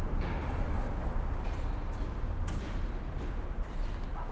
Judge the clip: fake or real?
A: real